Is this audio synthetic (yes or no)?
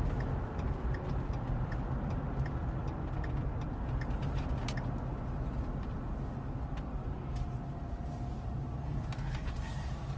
no